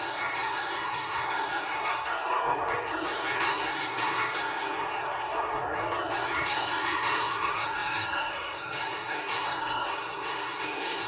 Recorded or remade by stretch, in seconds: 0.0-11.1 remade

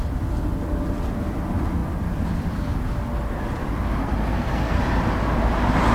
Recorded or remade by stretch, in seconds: 0.0-4.0 recorded; 4.0-4.8 remade; 4.8-5.9 recorded

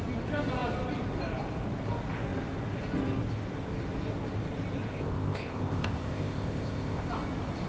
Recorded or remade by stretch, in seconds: 0.0-4.9 recorded; 4.9-7.1 remade; 7.1-7.7 recorded

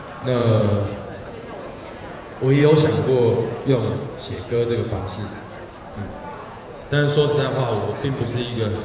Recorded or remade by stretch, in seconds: 0.0-0.4 recorded; 0.4-5.0 remade; 5.0-6.3 recorded; 6.3-6.9 remade; 6.9-8.8 recorded

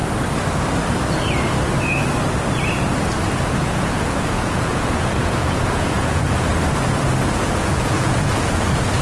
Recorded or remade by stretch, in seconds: 0.0-3.5 recorded; 3.5-6.5 remade; 6.5-7.3 recorded; 7.3-9.0 remade